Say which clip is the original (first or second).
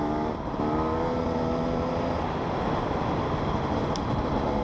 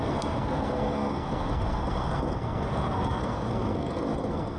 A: first